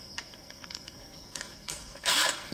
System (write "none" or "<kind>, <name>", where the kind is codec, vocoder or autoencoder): codec, SNAC